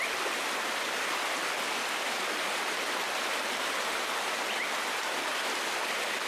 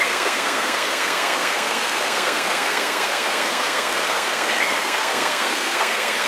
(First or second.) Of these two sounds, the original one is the first